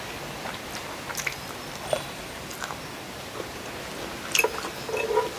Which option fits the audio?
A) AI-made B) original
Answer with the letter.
B